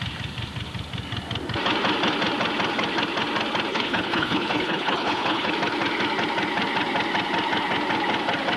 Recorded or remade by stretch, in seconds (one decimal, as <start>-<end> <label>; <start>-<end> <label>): 0.0-3.7 recorded; 3.7-5.5 remade; 5.5-8.6 recorded